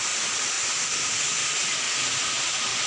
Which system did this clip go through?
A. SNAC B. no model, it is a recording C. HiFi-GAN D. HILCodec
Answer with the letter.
B